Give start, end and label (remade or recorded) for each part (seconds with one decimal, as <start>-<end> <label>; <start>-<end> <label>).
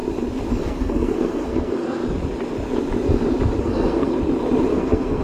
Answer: 0.0-0.5 recorded; 0.5-2.0 remade; 2.0-3.6 recorded; 3.6-4.1 remade; 4.1-4.7 recorded; 4.7-5.2 remade